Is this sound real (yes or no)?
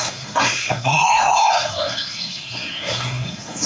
no